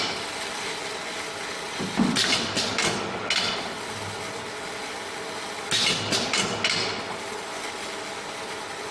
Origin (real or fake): real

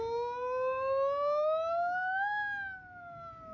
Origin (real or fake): real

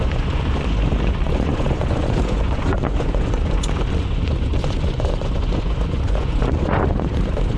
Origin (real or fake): fake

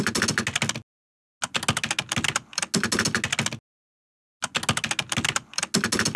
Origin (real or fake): real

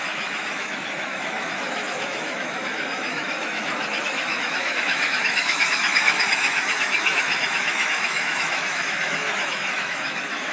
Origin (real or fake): fake